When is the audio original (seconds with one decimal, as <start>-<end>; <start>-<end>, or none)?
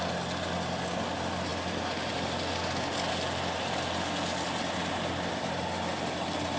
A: 0.0-6.6